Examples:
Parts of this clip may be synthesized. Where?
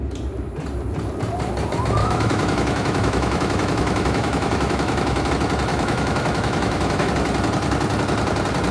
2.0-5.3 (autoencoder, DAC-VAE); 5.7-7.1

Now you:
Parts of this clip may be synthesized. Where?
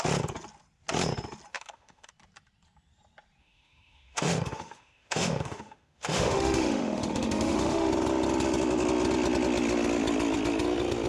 1.5-2.1 (autoencoder, DAC-VAE); 3.4-7.9